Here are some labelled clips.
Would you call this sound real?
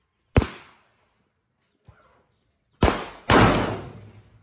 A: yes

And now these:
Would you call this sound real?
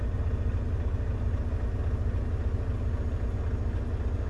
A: yes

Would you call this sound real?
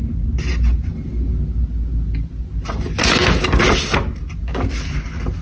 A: yes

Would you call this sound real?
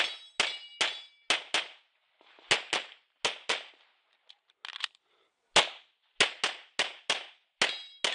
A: yes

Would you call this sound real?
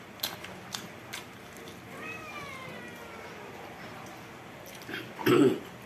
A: yes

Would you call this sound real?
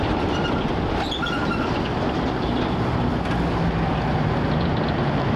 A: yes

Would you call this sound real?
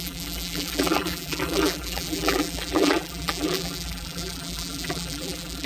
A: no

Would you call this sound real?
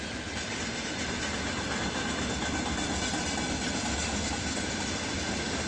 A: yes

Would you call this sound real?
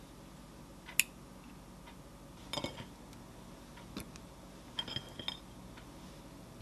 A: yes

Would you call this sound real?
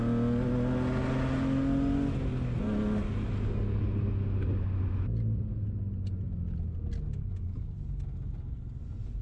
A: yes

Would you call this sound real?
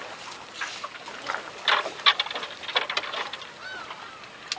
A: yes